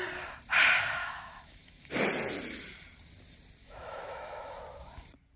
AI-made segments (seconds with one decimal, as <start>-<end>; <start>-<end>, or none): 1.0-1.9; 3.6-4.6